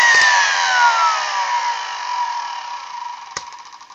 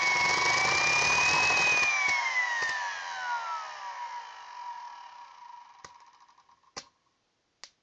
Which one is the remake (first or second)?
first